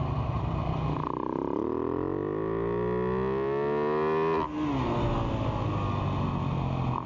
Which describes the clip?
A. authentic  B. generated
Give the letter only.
A